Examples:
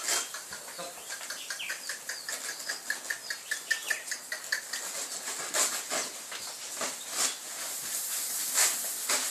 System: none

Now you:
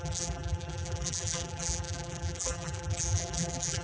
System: vocoder, BigVGAN v2